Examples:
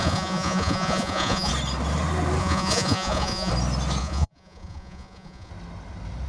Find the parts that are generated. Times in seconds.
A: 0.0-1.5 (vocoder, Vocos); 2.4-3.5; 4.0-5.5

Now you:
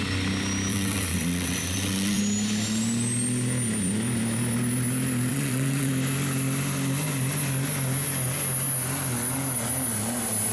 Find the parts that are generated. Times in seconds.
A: 0.7-2.2 (vocoder, WaveNeXt); 5.3-5.9

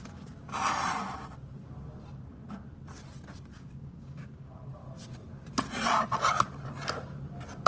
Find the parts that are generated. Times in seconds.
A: 3.5-4.5 (codec, DAC)

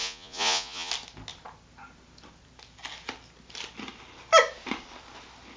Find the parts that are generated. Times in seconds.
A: 0.0-0.9 (vocoder, Vocos)

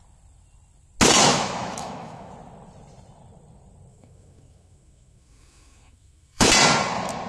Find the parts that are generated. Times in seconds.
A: 1.3-2.3 (autoencoder, DAC-VAE); 3.9-6.5

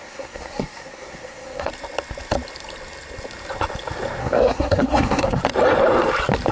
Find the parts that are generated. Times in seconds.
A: 0.0-1.7 (codec, SNAC); 4.2-5.4

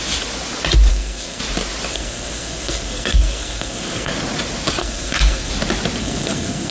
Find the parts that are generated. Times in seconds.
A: 0.9-1.4 (codec, SNAC); 1.9-4.1; 4.8-5.5; 6.0-6.7